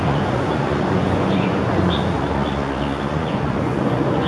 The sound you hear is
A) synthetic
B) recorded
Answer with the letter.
A